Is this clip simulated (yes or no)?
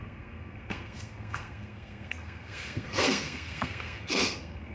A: yes